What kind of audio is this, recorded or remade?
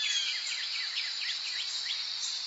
remade